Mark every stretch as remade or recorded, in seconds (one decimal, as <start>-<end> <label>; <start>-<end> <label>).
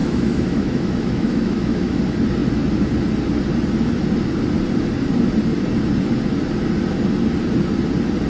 0.0-2.0 remade; 2.0-8.3 recorded